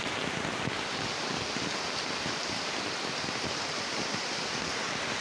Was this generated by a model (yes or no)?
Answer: no